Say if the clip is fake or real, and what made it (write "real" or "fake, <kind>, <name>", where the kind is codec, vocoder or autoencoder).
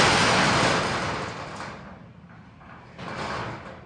real